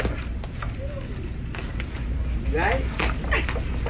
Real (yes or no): yes